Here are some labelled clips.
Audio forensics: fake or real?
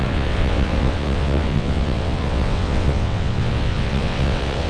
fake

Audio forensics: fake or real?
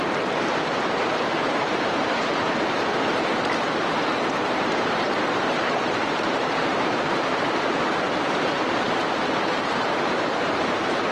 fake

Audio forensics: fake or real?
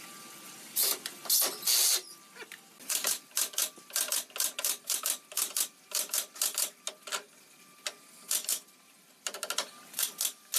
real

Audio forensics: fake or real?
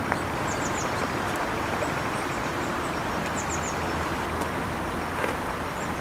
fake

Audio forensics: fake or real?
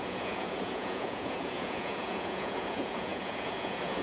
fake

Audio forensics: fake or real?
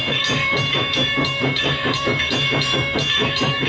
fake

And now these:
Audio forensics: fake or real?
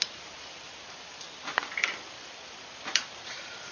fake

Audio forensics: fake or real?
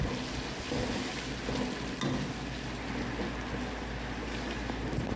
real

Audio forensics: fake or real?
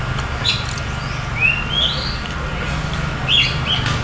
real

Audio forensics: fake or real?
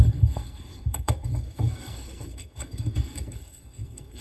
fake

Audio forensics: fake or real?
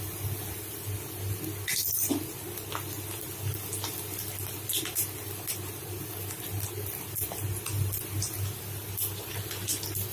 real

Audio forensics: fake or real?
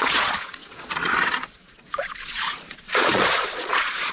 fake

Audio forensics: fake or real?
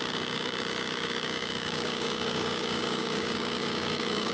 fake